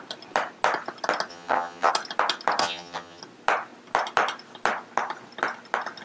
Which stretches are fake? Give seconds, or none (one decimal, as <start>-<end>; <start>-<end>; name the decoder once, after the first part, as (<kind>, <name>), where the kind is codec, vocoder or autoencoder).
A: 1.3-1.9 (vocoder, HiFi-GAN); 2.6-3.2